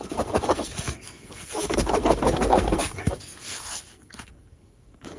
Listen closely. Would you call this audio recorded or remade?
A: remade